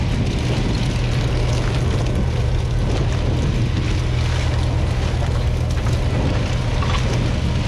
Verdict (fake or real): real